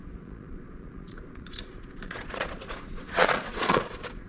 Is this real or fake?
fake